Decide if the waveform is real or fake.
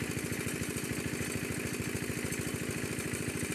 real